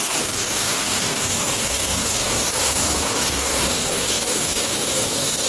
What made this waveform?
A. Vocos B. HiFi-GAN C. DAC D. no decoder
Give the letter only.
C